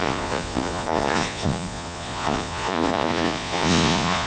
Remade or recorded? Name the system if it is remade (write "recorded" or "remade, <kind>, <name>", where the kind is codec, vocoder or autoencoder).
remade, vocoder, Vocos